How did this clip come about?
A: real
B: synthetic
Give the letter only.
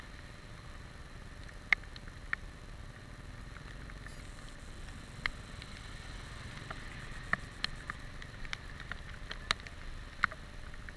A